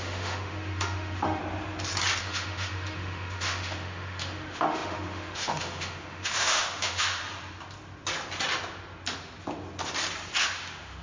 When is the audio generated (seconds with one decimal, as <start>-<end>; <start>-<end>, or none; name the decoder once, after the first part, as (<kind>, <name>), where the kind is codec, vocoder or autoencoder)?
0.0-1.4 (autoencoder, DAC-VAE); 2.2-7.2; 10.4-11.0